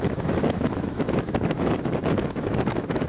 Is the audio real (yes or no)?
no